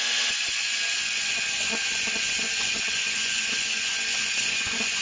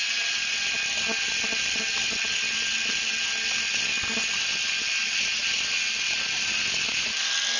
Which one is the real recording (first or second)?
second